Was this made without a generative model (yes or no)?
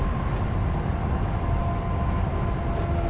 yes